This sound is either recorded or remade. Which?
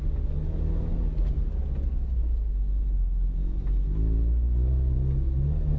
recorded